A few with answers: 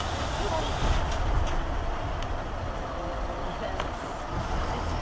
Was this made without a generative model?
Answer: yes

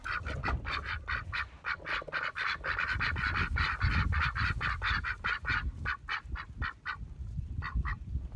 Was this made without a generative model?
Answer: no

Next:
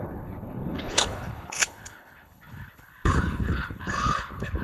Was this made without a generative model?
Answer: no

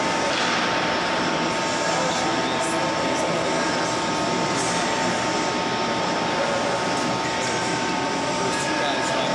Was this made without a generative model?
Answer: yes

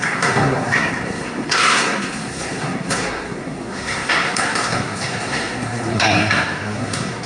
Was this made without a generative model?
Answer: no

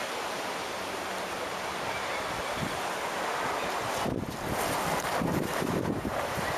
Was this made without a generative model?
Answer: yes